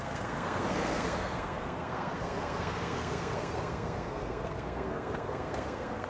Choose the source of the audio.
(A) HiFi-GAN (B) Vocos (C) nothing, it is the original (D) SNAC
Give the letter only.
D